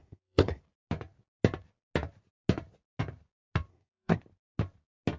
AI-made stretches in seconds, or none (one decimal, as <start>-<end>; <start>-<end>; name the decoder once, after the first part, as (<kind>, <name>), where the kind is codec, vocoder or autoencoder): 0.0-0.6 (codec, SNAC); 3.7-4.2